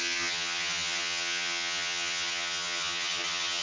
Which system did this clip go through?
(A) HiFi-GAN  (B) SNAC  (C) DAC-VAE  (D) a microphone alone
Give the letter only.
A